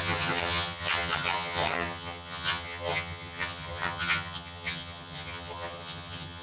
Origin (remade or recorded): remade